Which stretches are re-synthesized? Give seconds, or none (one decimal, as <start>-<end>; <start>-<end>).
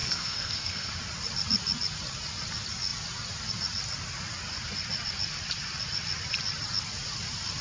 0.0-0.9